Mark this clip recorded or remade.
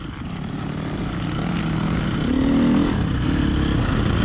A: recorded